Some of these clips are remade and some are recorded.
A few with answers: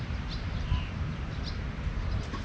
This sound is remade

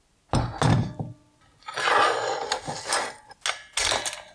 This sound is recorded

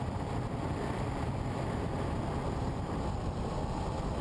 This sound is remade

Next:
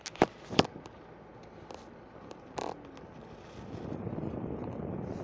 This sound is recorded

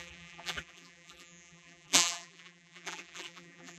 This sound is remade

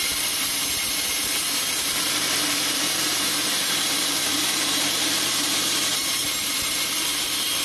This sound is remade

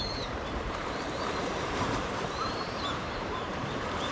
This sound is remade